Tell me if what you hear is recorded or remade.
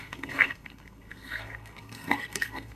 remade